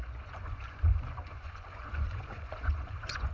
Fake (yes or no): yes